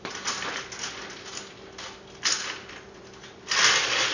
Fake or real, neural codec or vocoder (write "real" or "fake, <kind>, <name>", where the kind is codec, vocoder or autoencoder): real